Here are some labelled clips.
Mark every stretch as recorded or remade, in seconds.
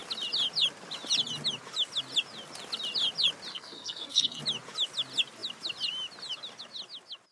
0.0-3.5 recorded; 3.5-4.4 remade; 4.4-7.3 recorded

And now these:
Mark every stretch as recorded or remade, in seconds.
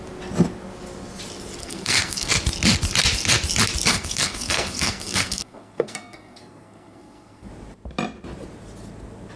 0.0-1.6 recorded; 1.6-2.3 remade; 2.3-3.9 recorded; 3.9-7.5 remade; 7.5-9.4 recorded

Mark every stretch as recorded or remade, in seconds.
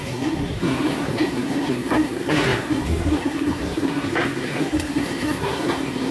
0.0-6.1 remade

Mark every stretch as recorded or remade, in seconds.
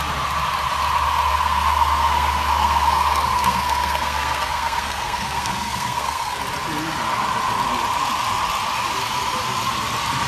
0.0-1.3 recorded; 1.3-6.4 remade; 6.4-10.3 recorded